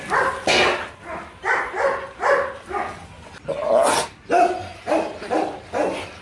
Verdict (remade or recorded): recorded